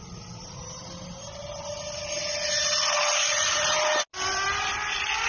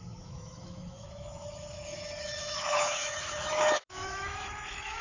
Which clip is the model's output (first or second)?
second